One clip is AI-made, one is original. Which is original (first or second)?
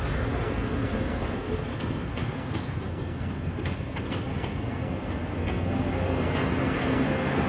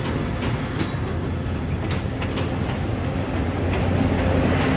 second